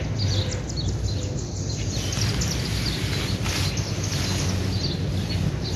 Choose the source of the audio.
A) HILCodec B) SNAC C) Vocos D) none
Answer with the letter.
D